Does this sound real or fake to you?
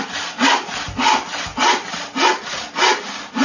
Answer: real